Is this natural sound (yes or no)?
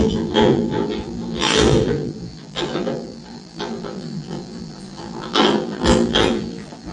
no